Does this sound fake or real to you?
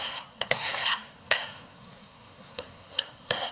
fake